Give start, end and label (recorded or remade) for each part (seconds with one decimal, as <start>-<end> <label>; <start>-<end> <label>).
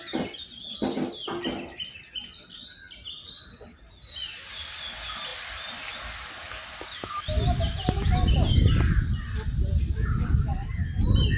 0.0-11.4 recorded